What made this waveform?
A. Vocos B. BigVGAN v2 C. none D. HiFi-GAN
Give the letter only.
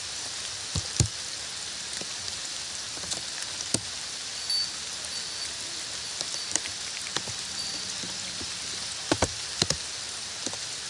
C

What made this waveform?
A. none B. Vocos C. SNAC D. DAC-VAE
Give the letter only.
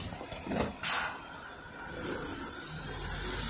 A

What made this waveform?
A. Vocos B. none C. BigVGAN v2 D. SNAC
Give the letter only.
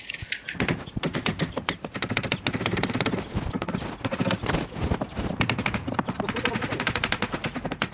B